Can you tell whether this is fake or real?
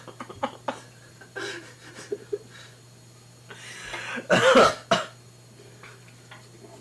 real